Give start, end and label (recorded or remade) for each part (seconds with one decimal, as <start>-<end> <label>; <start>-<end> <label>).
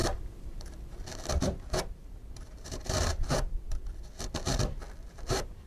0.0-3.8 remade; 3.8-5.1 recorded; 5.1-5.7 remade